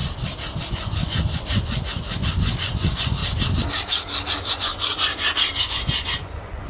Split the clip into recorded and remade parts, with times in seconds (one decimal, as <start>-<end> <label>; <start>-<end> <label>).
0.0-0.6 recorded; 0.6-3.2 remade; 3.2-4.5 recorded; 4.5-5.1 remade; 5.1-5.6 recorded; 5.6-6.7 remade